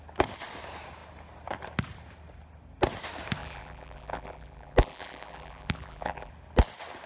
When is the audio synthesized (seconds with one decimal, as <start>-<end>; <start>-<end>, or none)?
3.4-6.3